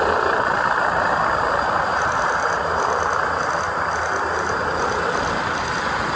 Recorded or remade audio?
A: recorded